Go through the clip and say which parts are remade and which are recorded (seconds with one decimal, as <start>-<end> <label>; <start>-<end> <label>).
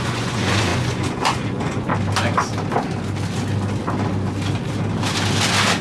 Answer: 0.0-1.9 remade; 1.9-5.8 recorded